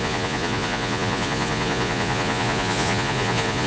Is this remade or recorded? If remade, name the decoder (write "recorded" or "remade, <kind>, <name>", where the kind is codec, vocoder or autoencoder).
remade, vocoder, Vocos